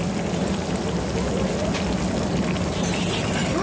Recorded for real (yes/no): yes